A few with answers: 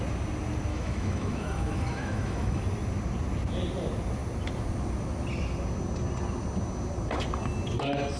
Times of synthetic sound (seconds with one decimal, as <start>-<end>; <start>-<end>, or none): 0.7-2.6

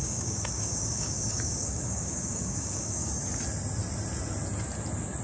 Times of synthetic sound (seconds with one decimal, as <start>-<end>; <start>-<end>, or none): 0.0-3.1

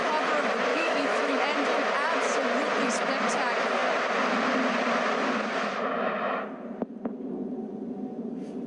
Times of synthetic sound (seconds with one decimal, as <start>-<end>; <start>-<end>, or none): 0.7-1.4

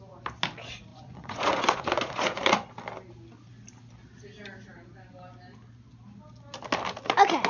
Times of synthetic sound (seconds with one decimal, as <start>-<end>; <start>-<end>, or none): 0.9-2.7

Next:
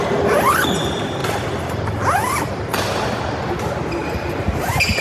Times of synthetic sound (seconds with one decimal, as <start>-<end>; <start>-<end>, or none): none

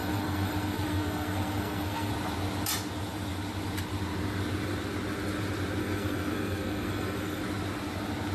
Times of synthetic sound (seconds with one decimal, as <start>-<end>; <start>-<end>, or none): 0.0-2.1; 5.8-7.4

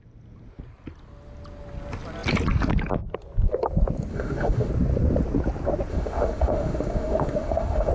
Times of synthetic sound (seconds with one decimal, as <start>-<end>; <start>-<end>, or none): 4.1-4.7; 5.9-7.9

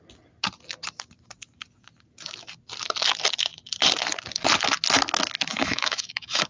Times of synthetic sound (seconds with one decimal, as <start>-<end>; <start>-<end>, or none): 5.5-6.5